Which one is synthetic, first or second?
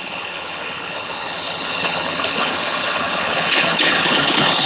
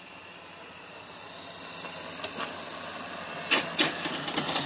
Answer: first